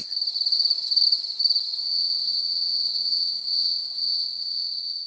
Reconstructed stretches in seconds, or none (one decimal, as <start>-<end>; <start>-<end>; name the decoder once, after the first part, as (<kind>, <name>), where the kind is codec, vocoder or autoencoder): 1.8-5.1 (vocoder, WaveNeXt)